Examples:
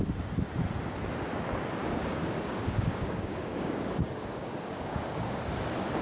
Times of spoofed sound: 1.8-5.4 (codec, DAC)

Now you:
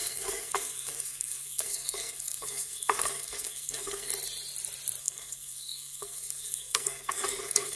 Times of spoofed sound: 0.0-4.1 (codec, SNAC); 5.0-7.8

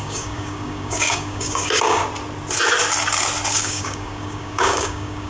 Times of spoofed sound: 0.0-2.0 (codec, DAC); 3.5-5.3

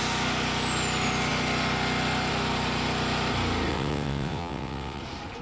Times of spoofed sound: 3.7-5.0 (vocoder, WaveNeXt)

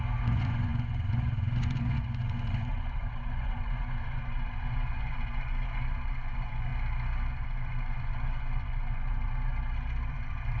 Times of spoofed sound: 0.0-6.7 (vocoder, Vocos); 7.3-9.5; 10.1-10.6